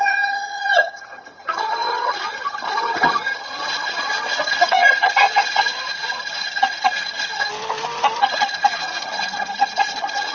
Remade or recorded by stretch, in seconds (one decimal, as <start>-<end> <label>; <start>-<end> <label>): 0.0-7.5 remade; 7.5-8.2 recorded; 8.2-10.3 remade